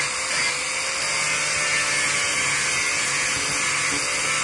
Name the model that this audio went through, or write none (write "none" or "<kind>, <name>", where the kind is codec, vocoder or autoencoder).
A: none